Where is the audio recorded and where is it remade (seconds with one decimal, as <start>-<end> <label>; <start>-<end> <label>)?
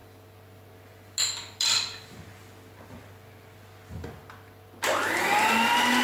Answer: 0.0-6.0 recorded